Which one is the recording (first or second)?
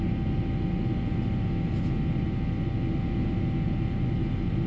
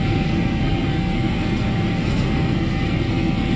first